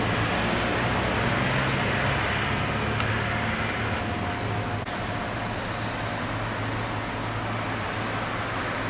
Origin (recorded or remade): recorded